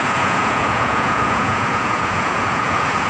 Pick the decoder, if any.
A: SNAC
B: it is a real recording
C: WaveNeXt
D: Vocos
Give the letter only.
D